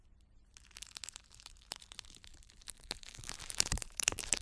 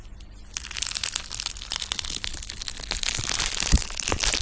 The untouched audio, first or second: second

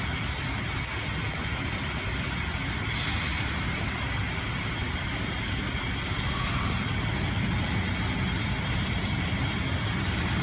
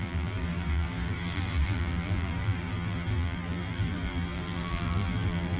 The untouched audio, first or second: first